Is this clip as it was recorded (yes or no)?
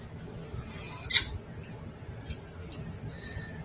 yes